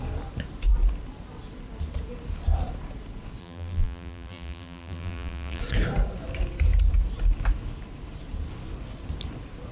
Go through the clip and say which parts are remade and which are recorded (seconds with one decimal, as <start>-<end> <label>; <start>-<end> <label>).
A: 0.0-3.4 recorded; 3.4-5.6 remade; 5.6-9.7 recorded